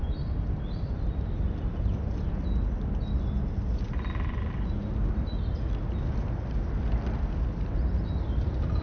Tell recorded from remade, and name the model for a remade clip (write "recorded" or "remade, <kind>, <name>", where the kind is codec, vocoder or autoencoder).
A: recorded